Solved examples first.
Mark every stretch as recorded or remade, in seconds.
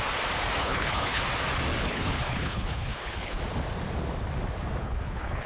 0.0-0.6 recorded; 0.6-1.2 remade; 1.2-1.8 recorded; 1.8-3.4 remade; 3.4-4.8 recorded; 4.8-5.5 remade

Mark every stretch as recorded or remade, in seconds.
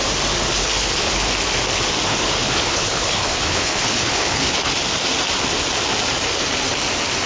0.0-0.4 recorded; 0.4-1.3 remade; 1.3-2.1 recorded; 2.1-4.7 remade; 4.7-7.3 recorded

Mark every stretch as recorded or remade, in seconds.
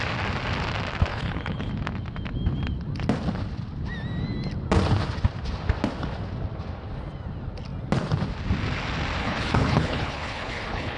0.0-1.1 recorded; 1.1-1.7 remade; 1.7-9.2 recorded; 9.2-11.0 remade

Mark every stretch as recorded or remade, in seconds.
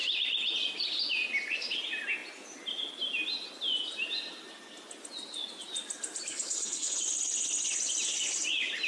0.0-6.3 recorded; 6.3-7.0 remade; 7.0-8.9 recorded